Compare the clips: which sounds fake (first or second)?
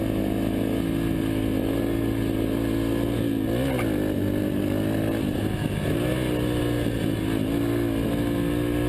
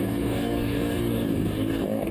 second